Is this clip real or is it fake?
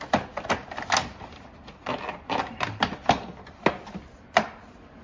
real